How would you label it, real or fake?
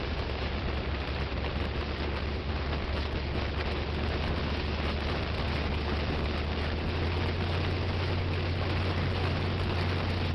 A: real